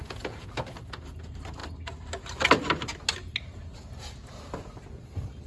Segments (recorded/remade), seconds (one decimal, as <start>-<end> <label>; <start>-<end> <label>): 0.0-0.5 remade; 0.5-5.5 recorded